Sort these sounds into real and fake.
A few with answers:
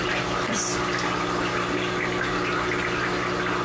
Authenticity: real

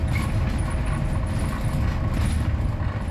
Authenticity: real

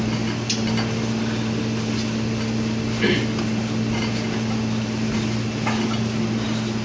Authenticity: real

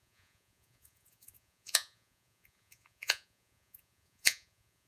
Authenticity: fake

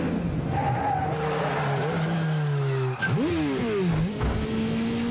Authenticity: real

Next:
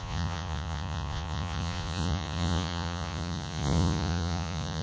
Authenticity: fake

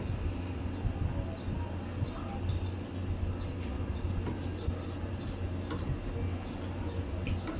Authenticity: real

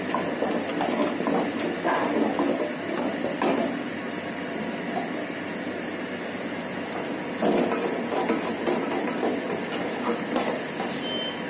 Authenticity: real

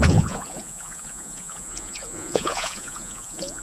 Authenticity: fake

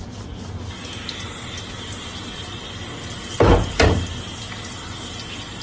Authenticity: real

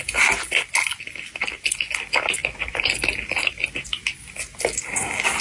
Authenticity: real